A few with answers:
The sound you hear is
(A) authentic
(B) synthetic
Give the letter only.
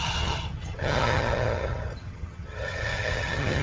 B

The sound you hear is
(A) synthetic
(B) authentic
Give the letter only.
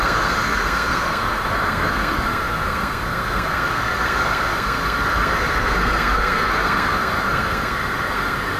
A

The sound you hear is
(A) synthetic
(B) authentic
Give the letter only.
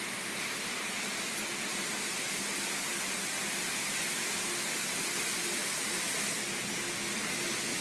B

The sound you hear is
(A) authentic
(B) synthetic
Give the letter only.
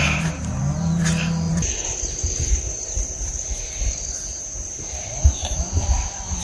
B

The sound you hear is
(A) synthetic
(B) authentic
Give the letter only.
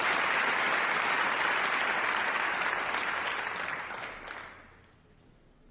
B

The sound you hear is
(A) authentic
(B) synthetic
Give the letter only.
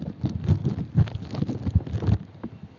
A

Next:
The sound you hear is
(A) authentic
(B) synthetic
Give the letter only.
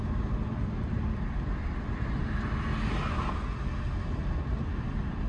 A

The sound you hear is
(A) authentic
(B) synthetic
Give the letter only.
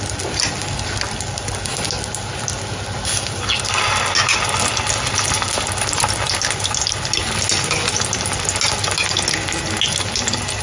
A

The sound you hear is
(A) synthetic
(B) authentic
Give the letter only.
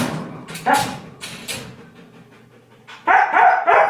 B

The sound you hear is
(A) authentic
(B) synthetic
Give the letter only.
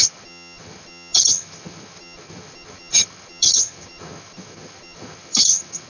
B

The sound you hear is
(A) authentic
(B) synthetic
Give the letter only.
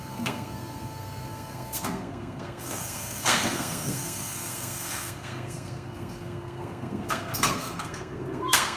B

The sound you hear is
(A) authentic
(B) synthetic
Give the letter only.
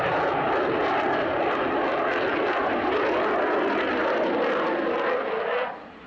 A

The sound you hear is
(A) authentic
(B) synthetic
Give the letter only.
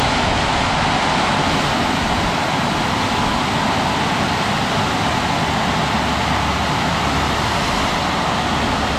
A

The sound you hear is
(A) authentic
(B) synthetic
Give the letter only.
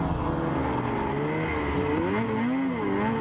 A